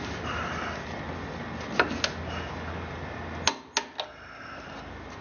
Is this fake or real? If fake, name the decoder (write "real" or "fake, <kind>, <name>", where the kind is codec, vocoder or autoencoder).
real